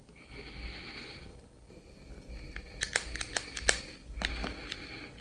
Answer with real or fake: real